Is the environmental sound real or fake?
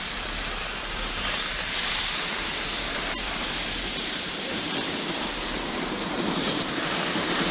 fake